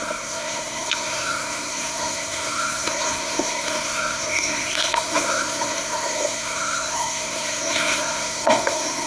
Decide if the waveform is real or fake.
fake